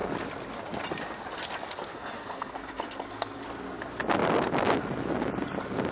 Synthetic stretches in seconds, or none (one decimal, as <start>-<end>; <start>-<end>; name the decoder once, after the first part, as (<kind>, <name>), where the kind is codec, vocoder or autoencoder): 1.9-3.4 (codec, SNAC)